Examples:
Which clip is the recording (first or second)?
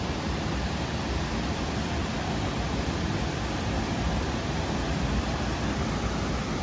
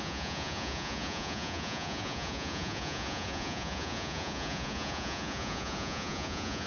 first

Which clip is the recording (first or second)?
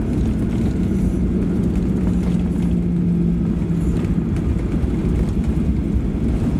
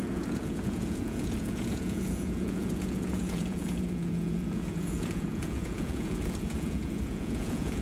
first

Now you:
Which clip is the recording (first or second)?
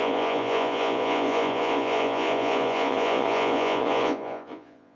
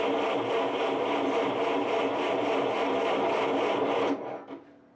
second